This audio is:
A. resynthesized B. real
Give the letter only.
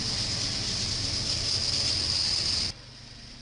B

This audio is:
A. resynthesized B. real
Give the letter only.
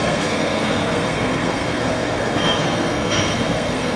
A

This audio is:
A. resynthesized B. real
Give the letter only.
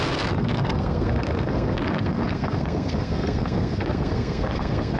A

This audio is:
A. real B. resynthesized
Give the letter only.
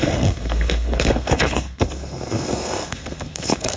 B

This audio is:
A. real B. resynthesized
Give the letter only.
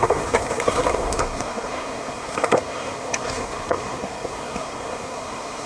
B